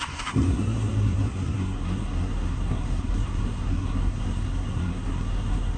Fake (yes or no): yes